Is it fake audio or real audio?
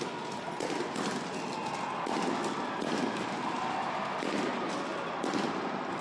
real